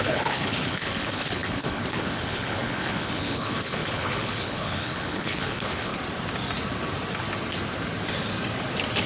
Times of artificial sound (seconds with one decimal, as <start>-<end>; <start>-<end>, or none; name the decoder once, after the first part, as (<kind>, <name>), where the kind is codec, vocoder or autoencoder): 0.0-5.9 (codec, HILCodec)